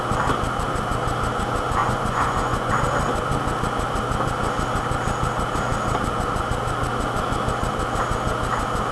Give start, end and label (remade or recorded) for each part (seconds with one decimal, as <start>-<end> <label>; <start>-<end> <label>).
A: 0.0-1.8 recorded; 1.8-2.7 remade; 2.7-8.9 recorded

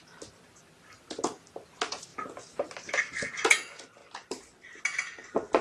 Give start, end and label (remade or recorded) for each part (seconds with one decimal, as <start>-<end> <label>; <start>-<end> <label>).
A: 0.0-4.0 recorded; 4.0-4.8 remade; 4.8-5.6 recorded

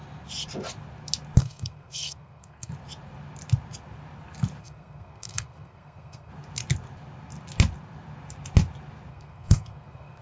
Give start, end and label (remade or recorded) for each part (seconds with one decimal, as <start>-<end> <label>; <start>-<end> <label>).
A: 0.0-1.4 recorded; 1.4-2.7 remade; 2.7-4.6 recorded; 4.6-6.3 remade; 6.3-9.1 recorded; 9.1-10.2 remade

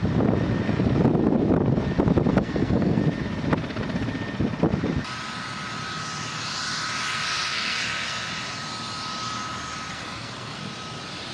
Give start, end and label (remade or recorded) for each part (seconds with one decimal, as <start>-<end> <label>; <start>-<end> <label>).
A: 0.0-2.3 recorded; 2.3-3.0 remade; 3.0-7.1 recorded; 7.1-8.3 remade; 8.3-9.9 recorded; 9.9-10.6 remade; 10.6-11.3 recorded